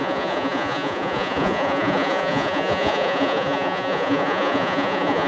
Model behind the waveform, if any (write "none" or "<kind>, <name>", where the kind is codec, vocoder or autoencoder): vocoder, Vocos